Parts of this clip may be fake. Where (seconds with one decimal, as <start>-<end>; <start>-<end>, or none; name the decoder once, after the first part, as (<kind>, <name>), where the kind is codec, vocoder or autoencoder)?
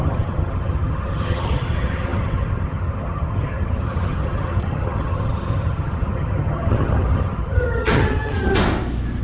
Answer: 0.0-8.5 (vocoder, HiFi-GAN)